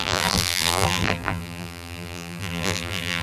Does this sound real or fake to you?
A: fake